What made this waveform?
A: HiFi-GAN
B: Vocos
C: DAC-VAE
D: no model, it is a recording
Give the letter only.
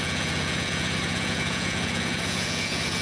B